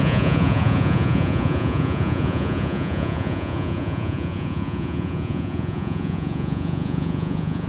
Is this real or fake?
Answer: fake